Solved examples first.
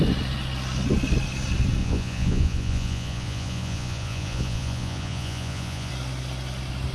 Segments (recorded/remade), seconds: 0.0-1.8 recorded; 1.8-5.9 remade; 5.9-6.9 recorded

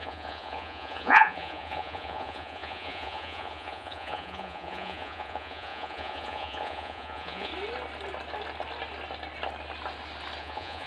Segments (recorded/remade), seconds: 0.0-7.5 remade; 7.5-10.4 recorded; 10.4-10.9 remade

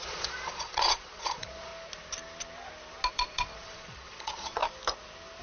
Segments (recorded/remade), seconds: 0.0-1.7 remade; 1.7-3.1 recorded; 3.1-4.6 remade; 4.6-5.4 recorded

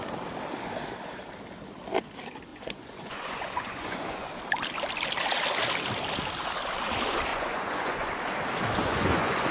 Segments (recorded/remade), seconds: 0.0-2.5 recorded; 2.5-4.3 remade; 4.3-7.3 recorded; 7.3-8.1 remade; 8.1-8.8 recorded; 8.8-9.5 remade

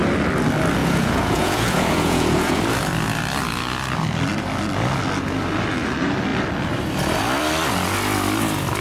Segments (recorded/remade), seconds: 0.0-0.8 recorded; 0.8-2.6 remade; 2.6-8.8 recorded

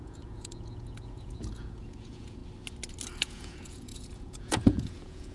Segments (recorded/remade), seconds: 0.0-2.4 remade; 2.4-3.2 recorded; 3.2-5.3 remade

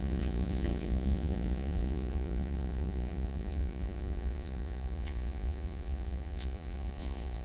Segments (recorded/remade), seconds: 0.0-7.4 remade